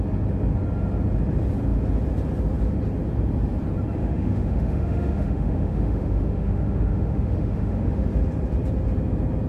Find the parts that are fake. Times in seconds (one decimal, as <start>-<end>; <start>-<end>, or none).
4.0-8.1

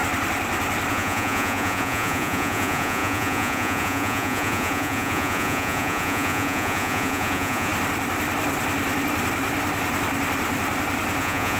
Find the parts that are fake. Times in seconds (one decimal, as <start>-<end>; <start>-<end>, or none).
0.9-7.7; 11.2-11.6

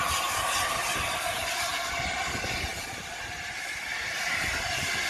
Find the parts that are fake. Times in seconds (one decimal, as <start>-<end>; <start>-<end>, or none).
none